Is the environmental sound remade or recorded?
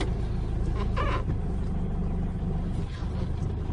recorded